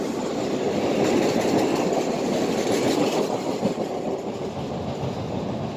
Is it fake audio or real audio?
real